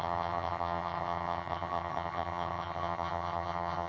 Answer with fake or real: fake